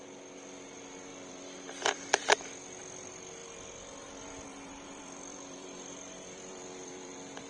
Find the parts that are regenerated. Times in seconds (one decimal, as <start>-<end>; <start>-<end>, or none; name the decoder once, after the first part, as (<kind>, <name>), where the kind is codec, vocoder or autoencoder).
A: 1.1-2.5 (vocoder, BigVGAN v2); 3.4-7.5